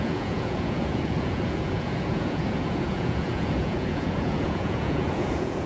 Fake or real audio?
fake